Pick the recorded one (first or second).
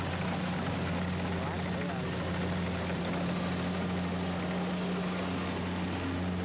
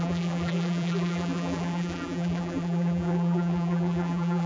first